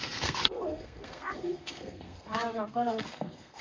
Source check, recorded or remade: remade